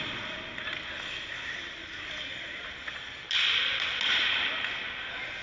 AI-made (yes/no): no